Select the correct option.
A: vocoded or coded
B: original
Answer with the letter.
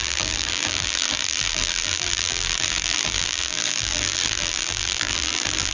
A